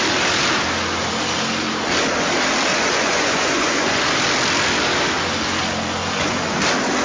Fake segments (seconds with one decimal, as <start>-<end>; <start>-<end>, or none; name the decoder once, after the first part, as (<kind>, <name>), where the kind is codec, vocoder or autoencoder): 2.7-4.0 (vocoder, Vocos); 6.0-6.6